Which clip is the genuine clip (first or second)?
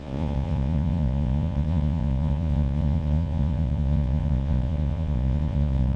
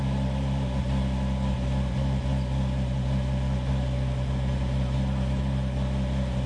second